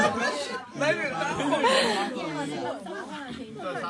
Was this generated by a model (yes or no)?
no